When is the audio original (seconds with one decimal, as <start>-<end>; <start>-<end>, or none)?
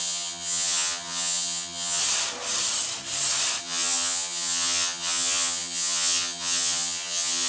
2.0-3.6